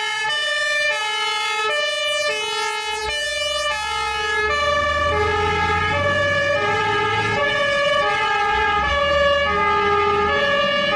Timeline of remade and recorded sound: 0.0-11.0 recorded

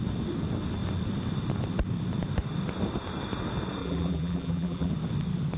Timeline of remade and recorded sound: 0.0-3.8 recorded; 3.8-4.9 remade; 4.9-5.6 recorded

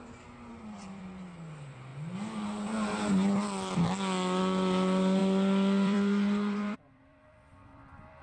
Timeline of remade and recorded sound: 0.0-0.5 recorded; 0.5-1.0 remade; 1.0-5.2 recorded; 5.2-8.2 remade

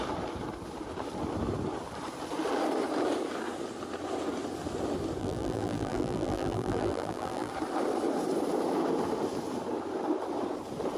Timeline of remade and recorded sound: 0.0-5.2 recorded; 5.2-7.5 remade; 7.5-11.0 recorded

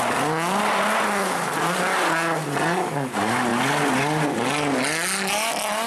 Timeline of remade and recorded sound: 0.0-5.9 recorded